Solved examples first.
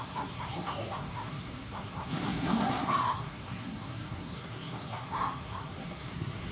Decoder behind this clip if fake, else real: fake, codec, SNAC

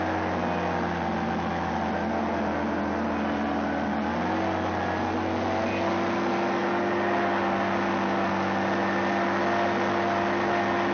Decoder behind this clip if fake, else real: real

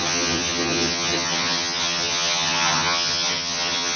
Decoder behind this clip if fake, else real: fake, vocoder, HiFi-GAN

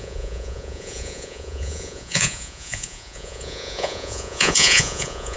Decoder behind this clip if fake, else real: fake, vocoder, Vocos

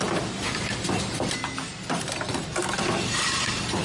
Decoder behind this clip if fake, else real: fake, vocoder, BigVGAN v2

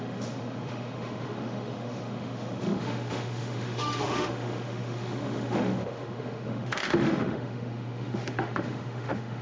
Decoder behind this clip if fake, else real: fake, autoencoder, DAC-VAE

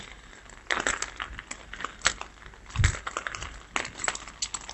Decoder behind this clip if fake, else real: real